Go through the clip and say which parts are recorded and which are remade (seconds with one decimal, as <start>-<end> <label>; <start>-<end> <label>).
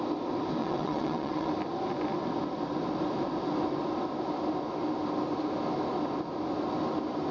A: 0.0-0.6 recorded; 0.6-1.5 remade; 1.5-7.3 recorded